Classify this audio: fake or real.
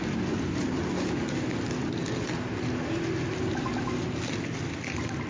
real